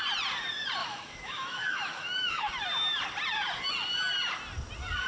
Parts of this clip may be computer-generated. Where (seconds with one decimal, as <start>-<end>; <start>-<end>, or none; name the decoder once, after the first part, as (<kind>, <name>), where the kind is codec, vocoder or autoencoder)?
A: 0.8-2.5 (autoencoder, DAC-VAE)